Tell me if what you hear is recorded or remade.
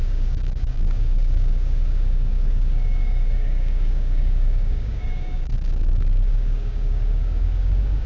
remade